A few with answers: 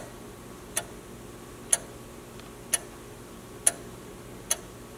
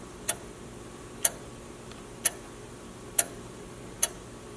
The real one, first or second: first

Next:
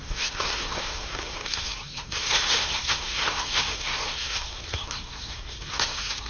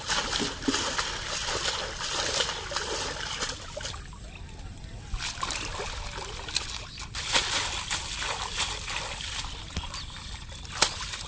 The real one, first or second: second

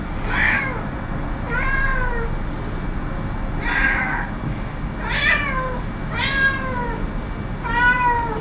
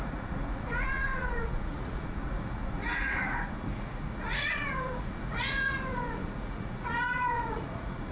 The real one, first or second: first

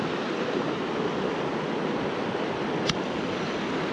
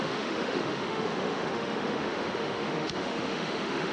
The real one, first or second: first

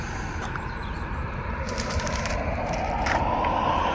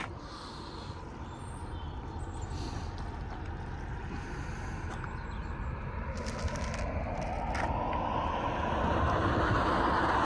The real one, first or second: second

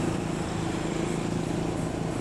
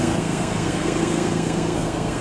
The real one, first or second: first